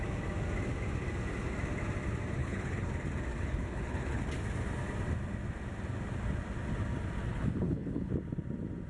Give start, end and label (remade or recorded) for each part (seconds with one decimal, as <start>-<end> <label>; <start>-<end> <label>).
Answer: 0.0-2.4 recorded; 2.4-2.9 remade; 2.9-3.3 recorded; 3.3-4.2 remade; 4.2-7.3 recorded; 7.3-8.1 remade; 8.1-8.9 recorded